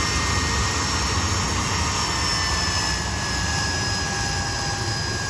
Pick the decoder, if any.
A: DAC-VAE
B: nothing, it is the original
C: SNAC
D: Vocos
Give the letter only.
B